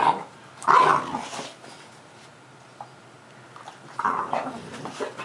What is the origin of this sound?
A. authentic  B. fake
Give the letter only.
A